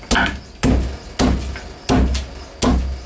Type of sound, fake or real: real